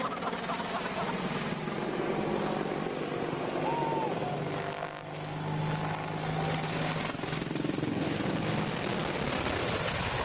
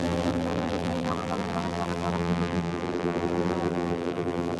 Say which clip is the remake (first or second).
second